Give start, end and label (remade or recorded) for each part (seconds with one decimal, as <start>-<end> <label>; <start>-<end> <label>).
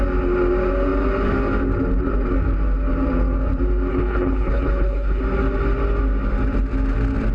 0.0-3.9 recorded; 3.9-5.2 remade; 5.2-7.3 recorded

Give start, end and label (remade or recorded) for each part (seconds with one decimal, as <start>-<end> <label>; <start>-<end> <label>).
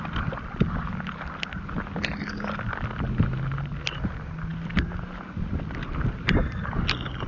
0.0-7.3 recorded